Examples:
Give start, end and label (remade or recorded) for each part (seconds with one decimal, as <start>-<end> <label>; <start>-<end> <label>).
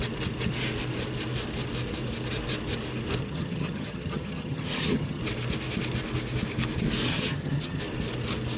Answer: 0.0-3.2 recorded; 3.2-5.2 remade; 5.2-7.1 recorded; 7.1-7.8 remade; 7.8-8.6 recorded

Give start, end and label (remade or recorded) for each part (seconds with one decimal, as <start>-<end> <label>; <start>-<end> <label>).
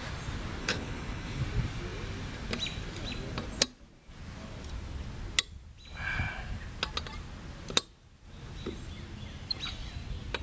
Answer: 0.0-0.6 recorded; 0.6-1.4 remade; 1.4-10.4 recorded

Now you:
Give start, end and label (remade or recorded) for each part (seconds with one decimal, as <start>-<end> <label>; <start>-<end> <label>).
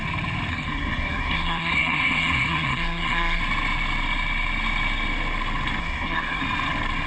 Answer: 0.0-0.5 recorded; 0.5-3.4 remade; 3.4-5.8 recorded; 5.8-6.4 remade; 6.4-7.1 recorded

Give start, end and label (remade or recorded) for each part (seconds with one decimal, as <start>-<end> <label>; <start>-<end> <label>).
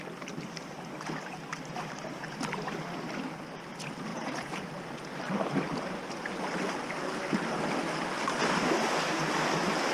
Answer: 0.0-4.1 recorded; 4.1-4.7 remade; 4.7-9.9 recorded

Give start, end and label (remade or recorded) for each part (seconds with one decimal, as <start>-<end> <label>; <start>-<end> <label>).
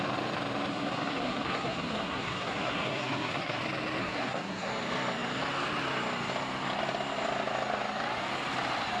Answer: 0.0-0.7 recorded; 0.7-3.6 remade; 3.6-4.0 recorded; 4.0-4.7 remade; 4.7-9.0 recorded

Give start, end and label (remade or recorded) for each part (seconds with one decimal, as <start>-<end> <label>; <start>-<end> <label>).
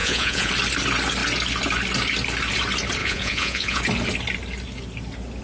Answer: 0.0-0.5 remade; 0.5-3.0 recorded; 3.0-3.8 remade; 3.8-5.4 recorded